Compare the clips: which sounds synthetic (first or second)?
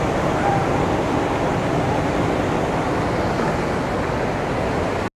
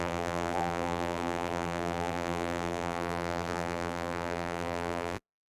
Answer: second